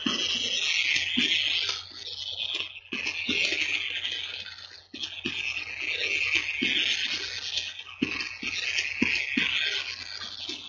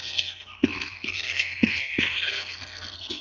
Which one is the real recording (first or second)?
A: first